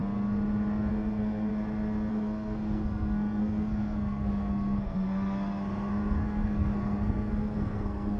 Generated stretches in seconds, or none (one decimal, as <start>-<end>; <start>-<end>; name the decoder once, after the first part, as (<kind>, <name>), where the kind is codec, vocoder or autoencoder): 0.9-1.5 (codec, SNAC); 2.1-8.2

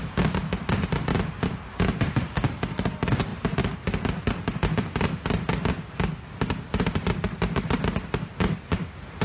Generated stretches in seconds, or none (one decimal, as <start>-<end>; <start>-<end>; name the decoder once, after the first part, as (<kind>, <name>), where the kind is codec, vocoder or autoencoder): none

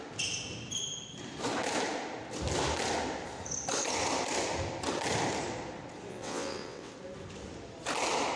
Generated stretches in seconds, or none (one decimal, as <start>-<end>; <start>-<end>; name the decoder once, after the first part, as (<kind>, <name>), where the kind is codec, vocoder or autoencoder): 6.1-6.9 (vocoder, WaveNeXt)

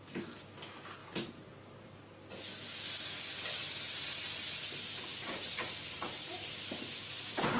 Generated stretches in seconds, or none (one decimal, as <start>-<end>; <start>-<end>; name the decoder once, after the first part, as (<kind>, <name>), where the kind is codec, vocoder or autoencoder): 1.0-2.0 (vocoder, BigVGAN v2); 5.1-7.6

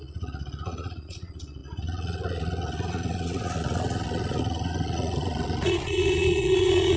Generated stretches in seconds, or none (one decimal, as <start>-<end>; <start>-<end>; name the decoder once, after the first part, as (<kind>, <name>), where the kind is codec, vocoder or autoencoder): 0.0-7.0 (vocoder, Vocos)